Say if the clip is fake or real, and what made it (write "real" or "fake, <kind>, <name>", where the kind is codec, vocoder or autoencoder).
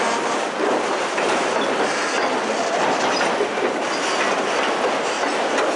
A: real